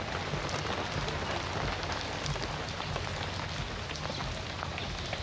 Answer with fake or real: real